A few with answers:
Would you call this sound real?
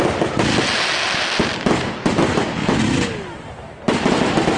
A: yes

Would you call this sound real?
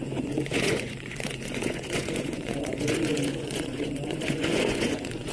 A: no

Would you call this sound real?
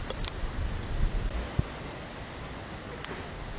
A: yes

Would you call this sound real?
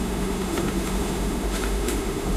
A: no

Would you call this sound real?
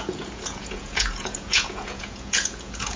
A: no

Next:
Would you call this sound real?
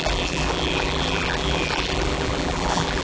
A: no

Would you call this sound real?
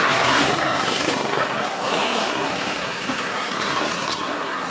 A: no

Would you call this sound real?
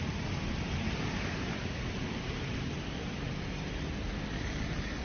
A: no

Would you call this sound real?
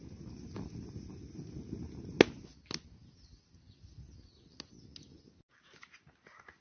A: yes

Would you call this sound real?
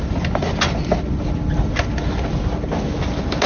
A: yes